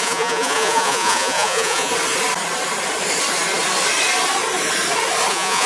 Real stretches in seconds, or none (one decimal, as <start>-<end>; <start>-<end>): 1.9-5.3